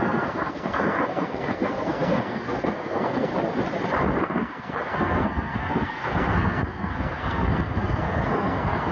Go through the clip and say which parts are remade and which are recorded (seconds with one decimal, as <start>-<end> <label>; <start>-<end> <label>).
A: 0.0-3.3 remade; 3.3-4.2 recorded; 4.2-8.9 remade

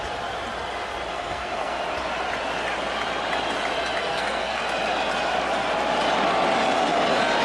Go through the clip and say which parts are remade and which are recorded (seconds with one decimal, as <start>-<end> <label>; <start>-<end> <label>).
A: 0.0-1.1 recorded; 1.1-1.8 remade; 1.8-4.0 recorded; 4.0-4.6 remade; 4.6-7.4 recorded

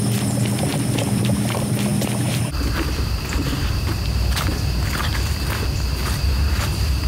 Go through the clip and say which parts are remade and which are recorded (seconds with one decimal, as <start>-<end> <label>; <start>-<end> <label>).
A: 0.0-7.1 recorded

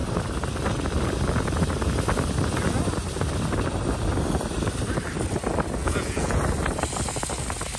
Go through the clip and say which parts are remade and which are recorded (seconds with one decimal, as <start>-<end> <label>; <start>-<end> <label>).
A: 0.0-5.8 recorded; 5.8-6.4 remade; 6.4-7.8 recorded

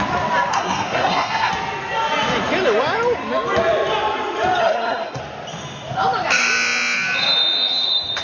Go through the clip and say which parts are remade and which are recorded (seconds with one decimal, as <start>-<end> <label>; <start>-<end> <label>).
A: 0.0-0.5 recorded; 0.5-1.5 remade; 1.5-4.6 recorded; 4.6-5.2 remade; 5.2-8.2 recorded

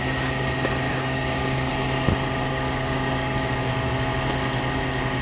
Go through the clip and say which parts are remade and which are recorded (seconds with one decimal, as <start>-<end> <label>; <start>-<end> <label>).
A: 0.0-0.9 recorded; 0.9-1.7 remade; 1.7-2.5 recorded; 2.5-3.7 remade; 3.7-5.2 recorded